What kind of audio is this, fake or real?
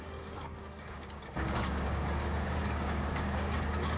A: fake